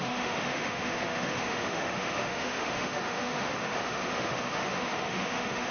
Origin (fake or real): fake